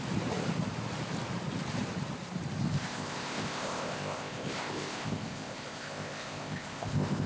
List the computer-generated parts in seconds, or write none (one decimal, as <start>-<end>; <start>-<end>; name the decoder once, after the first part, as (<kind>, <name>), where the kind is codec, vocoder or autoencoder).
2.7-7.3 (codec, ZipCodec)